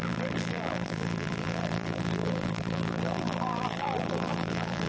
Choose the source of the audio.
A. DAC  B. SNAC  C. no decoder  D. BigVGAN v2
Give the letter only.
D